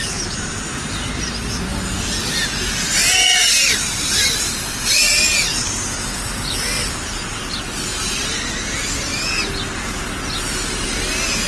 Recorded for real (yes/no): yes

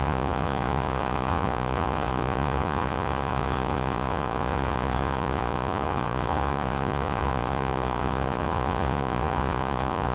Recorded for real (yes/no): no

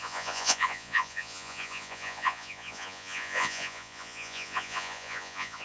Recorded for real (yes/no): no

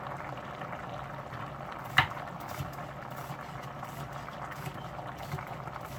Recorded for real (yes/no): yes